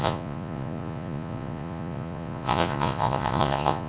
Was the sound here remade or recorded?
remade